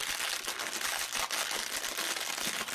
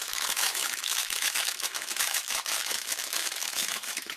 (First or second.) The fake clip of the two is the second